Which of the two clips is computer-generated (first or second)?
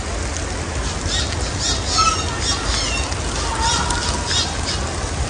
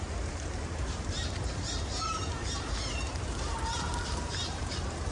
second